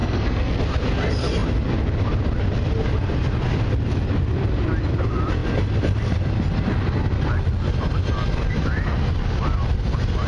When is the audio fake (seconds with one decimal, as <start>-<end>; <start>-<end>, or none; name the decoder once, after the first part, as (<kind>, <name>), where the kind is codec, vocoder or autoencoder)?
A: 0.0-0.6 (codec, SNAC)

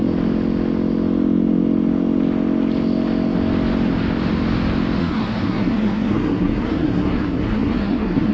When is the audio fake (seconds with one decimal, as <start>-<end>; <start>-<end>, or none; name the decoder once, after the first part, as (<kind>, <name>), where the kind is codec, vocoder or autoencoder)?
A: 5.0-8.3 (codec, SNAC)

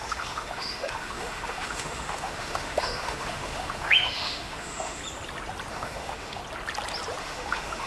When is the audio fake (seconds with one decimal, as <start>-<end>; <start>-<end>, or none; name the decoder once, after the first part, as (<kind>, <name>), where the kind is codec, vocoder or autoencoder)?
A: 0.0-5.0 (autoencoder, DAC-VAE); 5.7-6.4; 7.2-7.9